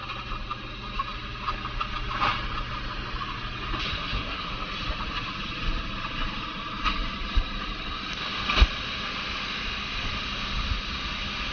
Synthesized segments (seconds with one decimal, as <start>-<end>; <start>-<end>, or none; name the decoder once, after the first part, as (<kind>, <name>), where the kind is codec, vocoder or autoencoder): 3.9-4.5 (codec, SNAC)